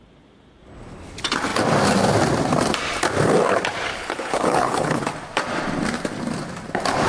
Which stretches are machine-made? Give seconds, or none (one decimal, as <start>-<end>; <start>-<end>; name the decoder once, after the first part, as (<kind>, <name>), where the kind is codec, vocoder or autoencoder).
3.9-5.0 (codec, HILCodec)